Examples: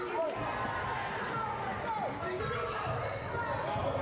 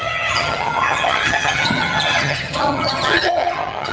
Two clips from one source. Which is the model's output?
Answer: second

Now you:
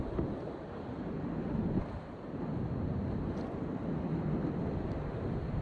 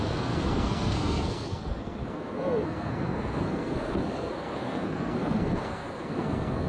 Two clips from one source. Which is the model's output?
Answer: second